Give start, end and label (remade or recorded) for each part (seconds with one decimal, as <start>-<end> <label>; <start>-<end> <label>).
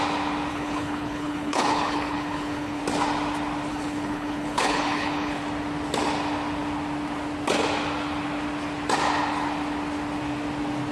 0.0-0.5 recorded; 0.5-2.8 remade; 2.8-3.7 recorded; 3.7-5.4 remade; 5.4-10.9 recorded